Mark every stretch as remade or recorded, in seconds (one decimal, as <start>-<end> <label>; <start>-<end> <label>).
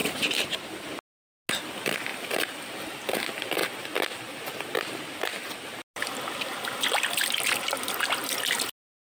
0.0-0.6 remade; 0.6-2.1 recorded; 2.1-2.8 remade; 2.8-9.0 recorded